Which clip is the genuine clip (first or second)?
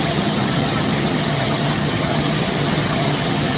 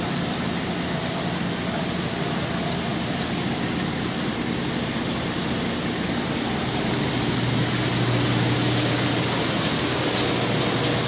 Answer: second